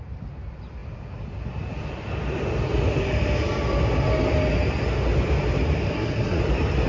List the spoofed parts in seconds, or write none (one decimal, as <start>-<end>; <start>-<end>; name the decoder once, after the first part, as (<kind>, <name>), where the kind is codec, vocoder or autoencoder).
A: 5.9-6.4 (codec, SNAC)